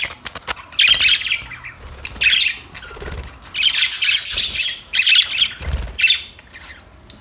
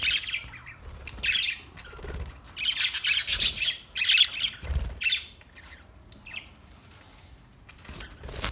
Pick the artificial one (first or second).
second